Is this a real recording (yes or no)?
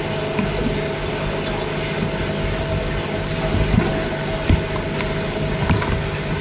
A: yes